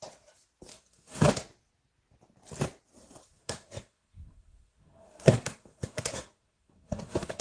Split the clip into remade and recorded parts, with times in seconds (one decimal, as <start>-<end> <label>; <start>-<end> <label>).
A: 0.0-0.7 recorded; 0.7-1.3 remade; 1.3-3.2 recorded; 3.2-7.4 remade